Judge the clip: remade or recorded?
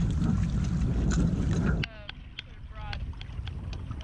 recorded